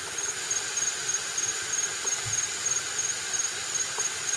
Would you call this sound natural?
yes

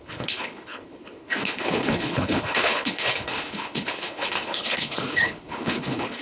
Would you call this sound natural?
no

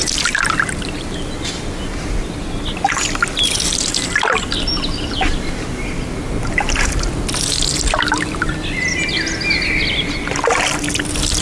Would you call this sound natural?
yes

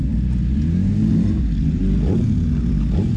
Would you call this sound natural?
yes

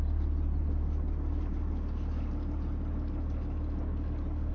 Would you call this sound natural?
yes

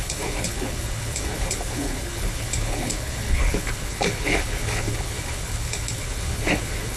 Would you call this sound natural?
no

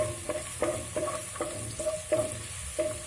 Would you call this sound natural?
yes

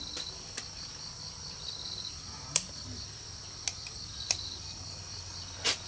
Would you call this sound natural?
yes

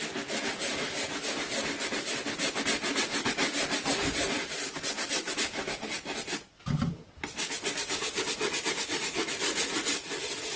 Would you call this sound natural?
yes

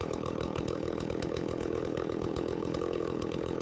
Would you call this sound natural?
no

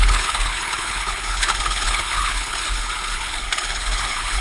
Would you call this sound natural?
no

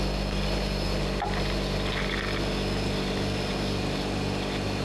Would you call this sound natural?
yes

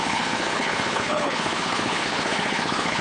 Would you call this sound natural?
no